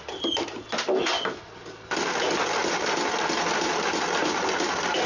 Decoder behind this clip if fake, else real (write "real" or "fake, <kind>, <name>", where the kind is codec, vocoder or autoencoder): real